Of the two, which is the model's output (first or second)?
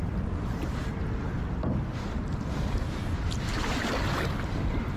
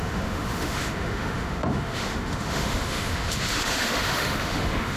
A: second